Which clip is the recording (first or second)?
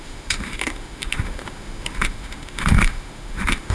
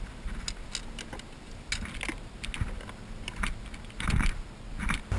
second